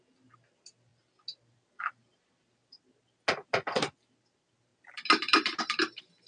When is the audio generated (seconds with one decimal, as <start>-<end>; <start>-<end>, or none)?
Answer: none